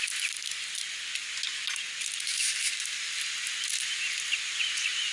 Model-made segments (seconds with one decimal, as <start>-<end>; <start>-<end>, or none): none